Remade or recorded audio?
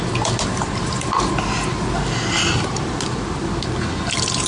recorded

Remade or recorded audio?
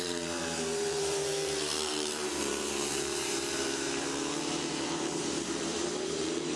remade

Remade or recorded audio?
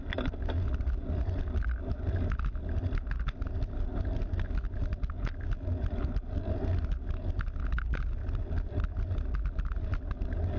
recorded